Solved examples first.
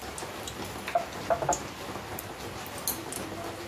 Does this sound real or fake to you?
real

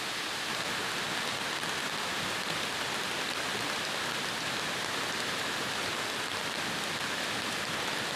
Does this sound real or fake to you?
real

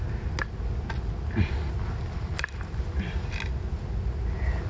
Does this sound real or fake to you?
real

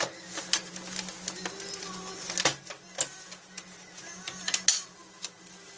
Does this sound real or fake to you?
real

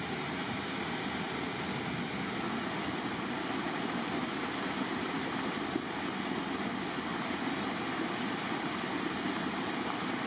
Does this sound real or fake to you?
real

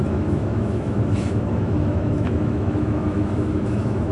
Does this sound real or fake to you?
fake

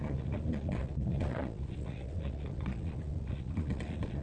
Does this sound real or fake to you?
fake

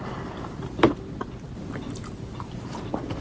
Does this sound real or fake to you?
real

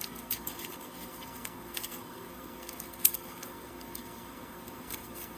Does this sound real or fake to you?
fake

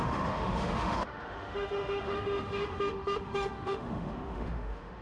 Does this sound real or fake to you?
fake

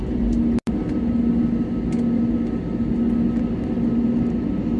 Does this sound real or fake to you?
real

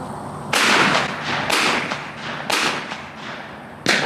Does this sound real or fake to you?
real